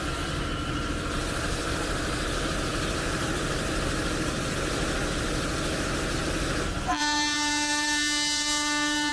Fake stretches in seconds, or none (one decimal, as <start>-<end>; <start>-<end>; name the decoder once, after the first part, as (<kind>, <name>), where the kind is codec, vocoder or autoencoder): 7.0-9.1 (vocoder, BigVGAN v2)